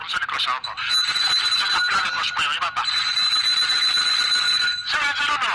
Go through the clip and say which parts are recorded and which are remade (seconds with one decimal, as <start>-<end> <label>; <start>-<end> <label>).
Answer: 0.0-5.5 recorded